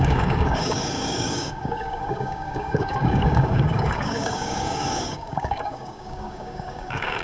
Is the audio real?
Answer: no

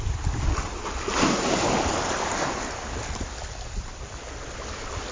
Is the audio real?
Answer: yes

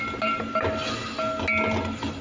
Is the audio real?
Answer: yes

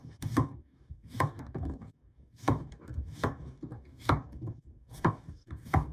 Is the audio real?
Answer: no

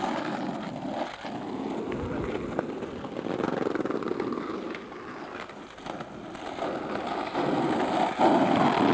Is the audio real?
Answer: yes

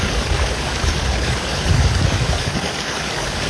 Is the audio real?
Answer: no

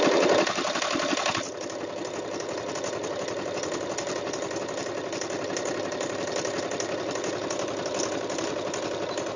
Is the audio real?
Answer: yes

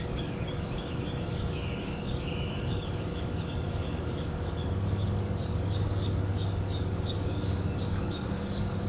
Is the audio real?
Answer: no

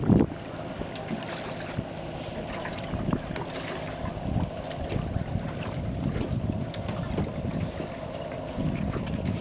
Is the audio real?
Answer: yes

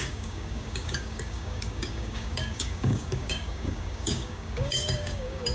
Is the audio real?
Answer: no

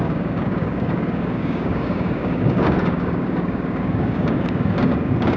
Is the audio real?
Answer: no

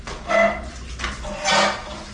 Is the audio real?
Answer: yes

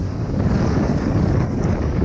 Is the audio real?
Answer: no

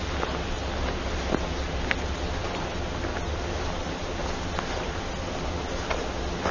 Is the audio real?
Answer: yes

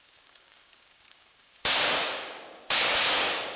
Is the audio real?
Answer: no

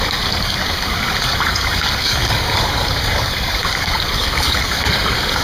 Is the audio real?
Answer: no